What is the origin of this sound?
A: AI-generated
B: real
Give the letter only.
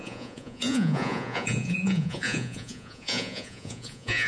A